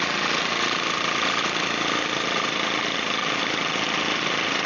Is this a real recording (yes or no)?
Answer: yes